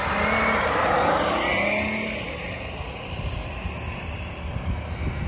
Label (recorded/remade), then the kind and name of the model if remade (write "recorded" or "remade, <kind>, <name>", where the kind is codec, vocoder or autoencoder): recorded